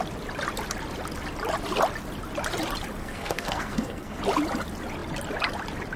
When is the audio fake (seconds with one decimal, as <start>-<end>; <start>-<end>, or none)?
3.0-4.2